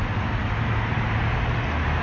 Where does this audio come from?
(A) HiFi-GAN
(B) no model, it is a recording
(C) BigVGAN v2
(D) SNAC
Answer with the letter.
B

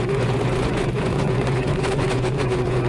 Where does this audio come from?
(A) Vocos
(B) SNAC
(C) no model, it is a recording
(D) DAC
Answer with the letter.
A